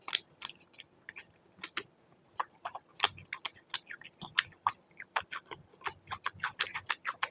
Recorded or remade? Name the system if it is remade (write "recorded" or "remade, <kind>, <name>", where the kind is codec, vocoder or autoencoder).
recorded